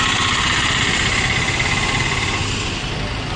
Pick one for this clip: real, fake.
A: real